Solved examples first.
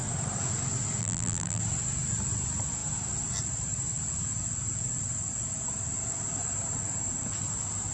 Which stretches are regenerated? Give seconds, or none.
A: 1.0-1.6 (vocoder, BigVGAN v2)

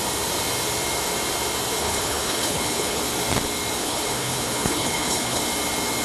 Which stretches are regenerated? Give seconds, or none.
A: 1.8-3.0 (codec, HILCodec); 3.8-5.4

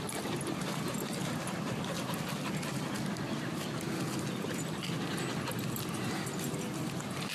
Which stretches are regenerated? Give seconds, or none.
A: none

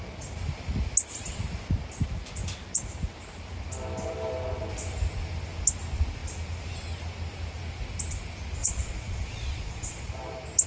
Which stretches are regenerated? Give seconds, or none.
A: 8.6-10.1 (vocoder, Vocos)